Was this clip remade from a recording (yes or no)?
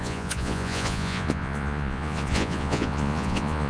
yes